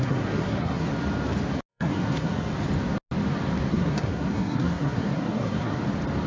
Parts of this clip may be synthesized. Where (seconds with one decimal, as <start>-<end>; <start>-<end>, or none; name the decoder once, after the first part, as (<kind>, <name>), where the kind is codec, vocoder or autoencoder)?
0.0-0.9 (codec, SNAC); 1.7-2.5; 3.7-5.8

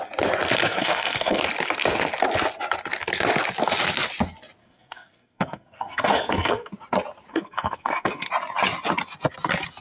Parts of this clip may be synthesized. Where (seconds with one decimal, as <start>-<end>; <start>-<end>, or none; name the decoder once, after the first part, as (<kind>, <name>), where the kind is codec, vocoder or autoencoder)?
0.6-1.4 (codec, SNAC); 4.6-6.7; 7.3-8.3